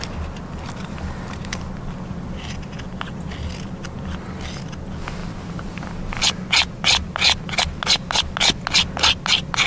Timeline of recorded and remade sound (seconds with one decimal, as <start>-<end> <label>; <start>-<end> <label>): 0.0-5.2 recorded; 5.2-6.2 remade; 6.2-9.7 recorded